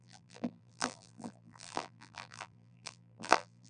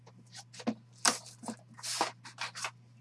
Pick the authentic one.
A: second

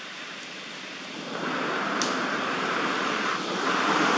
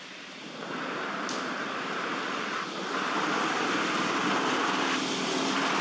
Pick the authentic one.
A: first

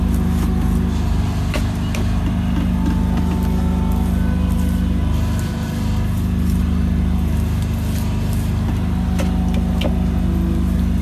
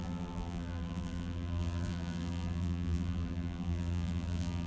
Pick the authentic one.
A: first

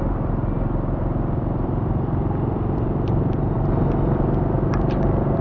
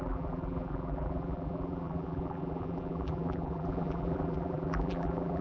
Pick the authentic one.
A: first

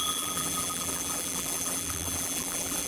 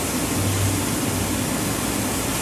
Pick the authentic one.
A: second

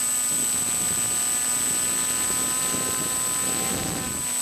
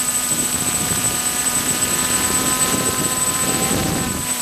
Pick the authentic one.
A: first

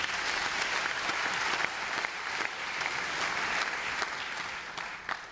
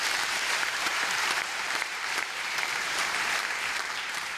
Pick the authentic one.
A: first